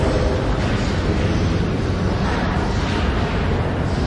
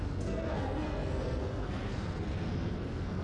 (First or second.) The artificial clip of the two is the second